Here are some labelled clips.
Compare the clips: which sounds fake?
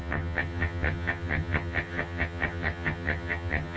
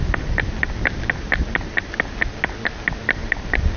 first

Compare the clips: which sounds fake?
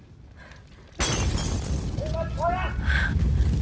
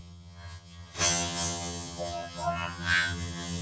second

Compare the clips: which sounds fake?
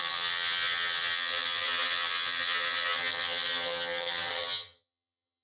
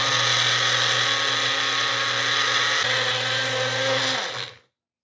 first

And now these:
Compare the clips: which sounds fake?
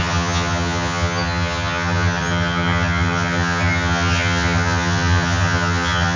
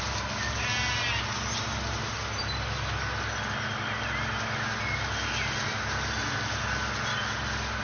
first